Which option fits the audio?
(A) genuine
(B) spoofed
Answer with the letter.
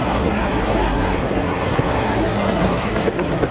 B